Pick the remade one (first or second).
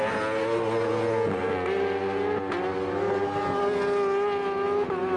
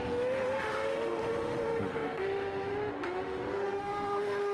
second